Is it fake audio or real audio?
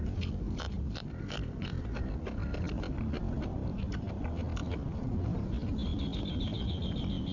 real